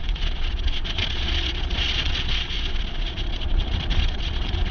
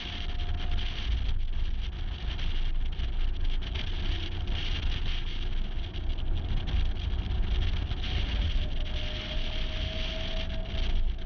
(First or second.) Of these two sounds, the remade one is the first